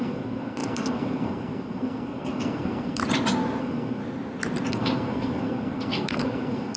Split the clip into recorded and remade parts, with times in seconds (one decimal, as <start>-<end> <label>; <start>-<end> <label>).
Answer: 0.0-3.0 remade; 3.0-3.6 recorded; 3.6-4.0 remade; 4.0-4.7 recorded; 4.7-6.8 remade

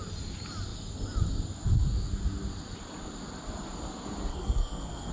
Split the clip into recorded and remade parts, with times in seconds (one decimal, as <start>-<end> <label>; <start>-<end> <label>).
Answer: 0.0-4.3 recorded; 4.3-5.1 remade

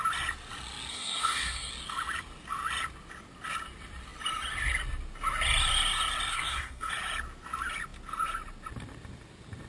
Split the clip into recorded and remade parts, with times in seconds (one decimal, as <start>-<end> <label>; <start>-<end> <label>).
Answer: 0.0-0.9 recorded; 0.9-1.7 remade; 1.7-6.3 recorded; 6.3-6.9 remade; 6.9-9.7 recorded